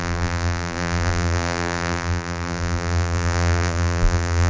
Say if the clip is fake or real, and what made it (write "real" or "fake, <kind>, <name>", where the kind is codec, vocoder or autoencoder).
fake, vocoder, BigVGAN v2